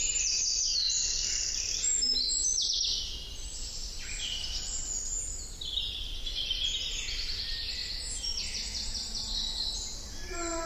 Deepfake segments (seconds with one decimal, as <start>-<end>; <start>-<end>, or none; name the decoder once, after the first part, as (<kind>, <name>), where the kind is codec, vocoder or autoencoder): none